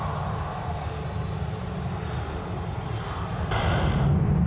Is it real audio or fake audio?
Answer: real